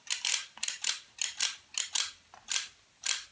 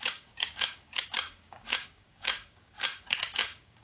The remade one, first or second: second